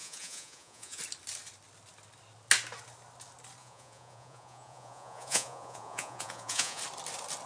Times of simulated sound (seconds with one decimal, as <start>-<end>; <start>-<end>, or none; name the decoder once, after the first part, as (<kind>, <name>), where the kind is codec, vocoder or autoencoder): 0.0-1.0 (vocoder, Vocos); 3.6-6.8